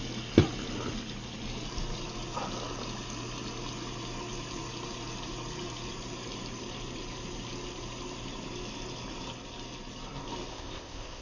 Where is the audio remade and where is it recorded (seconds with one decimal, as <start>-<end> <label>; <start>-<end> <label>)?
0.0-10.5 recorded; 10.5-11.2 remade

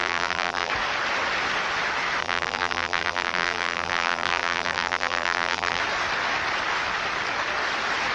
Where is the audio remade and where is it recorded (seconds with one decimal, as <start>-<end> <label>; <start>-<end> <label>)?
0.0-0.7 remade; 0.7-2.2 recorded; 2.2-5.8 remade; 5.8-8.1 recorded

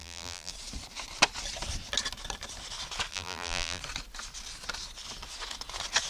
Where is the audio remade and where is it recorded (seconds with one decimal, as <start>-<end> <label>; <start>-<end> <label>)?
0.0-0.5 remade; 0.5-3.1 recorded; 3.1-3.8 remade; 3.8-6.1 recorded

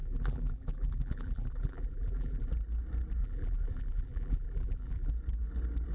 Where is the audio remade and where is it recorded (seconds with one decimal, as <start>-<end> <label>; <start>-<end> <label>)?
0.0-2.5 remade; 2.5-3.2 recorded; 3.2-5.1 remade; 5.1-5.9 recorded

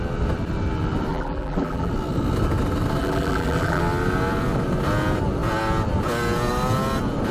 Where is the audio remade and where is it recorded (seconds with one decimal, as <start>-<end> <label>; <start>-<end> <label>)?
0.0-1.1 recorded; 1.1-1.9 remade; 1.9-3.0 recorded; 3.0-3.8 remade; 3.8-7.3 recorded

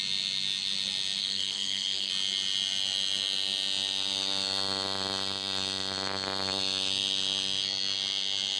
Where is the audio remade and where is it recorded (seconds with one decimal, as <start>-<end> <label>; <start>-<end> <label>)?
0.0-1.2 recorded; 1.2-2.1 remade; 2.1-8.6 recorded

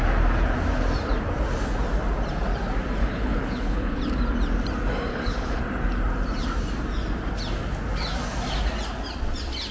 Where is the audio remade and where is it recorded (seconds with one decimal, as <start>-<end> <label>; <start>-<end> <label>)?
0.0-3.0 recorded; 3.0-4.0 remade; 4.0-5.1 recorded; 5.1-5.6 remade; 5.6-9.7 recorded

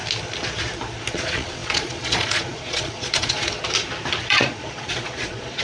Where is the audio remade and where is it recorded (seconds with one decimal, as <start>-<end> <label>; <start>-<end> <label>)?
0.0-1.1 recorded; 1.1-3.5 remade; 3.5-4.2 recorded; 4.2-5.6 remade